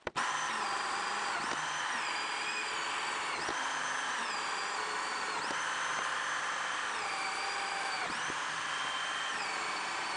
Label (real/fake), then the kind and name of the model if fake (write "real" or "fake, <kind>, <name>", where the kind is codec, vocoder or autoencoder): fake, vocoder, BigVGAN v2